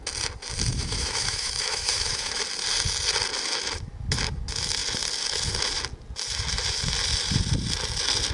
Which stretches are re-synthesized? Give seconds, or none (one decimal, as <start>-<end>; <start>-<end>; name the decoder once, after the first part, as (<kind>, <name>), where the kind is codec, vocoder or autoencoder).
0.7-2.4 (autoencoder, DAC-VAE)